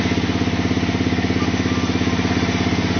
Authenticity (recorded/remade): recorded